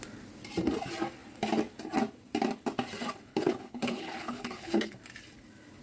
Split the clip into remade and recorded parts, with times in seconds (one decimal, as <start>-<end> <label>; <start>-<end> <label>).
0.0-3.3 recorded; 3.3-5.0 remade; 5.0-5.8 recorded